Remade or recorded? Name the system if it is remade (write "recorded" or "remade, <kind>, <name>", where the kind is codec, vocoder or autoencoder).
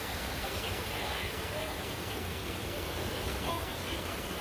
remade, codec, SNAC